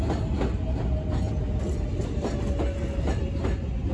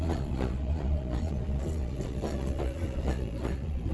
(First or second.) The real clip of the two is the first